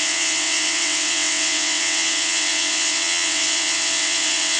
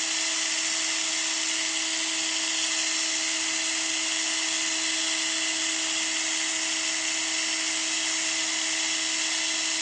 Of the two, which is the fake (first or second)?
first